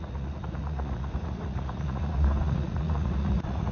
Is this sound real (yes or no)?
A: no